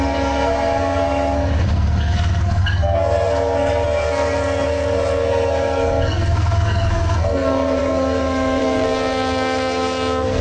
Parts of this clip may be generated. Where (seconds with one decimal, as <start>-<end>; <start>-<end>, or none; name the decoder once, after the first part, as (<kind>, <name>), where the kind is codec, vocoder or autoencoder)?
0.0-10.4 (codec, SNAC)